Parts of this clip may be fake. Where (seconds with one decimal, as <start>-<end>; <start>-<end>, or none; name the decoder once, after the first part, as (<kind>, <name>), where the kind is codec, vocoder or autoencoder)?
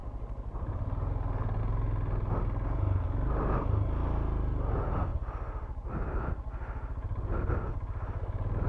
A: 5.1-6.0 (vocoder, BigVGAN v2)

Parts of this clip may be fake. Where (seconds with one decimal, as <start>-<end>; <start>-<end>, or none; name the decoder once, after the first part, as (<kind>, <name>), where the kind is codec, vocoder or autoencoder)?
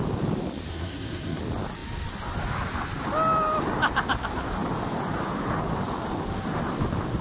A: 0.7-1.4 (codec, SNAC)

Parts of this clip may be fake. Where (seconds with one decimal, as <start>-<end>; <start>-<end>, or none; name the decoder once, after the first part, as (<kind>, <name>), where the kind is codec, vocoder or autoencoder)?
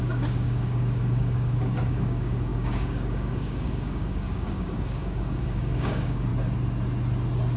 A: 0.0-6.3 (codec, DAC)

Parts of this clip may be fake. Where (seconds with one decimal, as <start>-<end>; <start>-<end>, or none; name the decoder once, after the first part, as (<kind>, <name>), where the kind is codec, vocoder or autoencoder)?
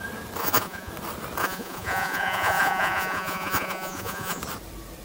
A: 0.4-0.9 (vocoder, Vocos); 1.4-4.4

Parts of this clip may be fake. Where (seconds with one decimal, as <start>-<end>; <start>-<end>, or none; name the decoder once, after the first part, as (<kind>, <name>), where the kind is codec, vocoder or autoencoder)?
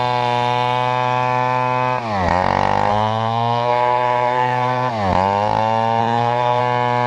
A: 2.9-4.9 (codec, SNAC); 6.0-6.6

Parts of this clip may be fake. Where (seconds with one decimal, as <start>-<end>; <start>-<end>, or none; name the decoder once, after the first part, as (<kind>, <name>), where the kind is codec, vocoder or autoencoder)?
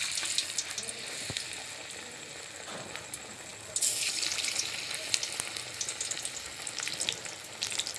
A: none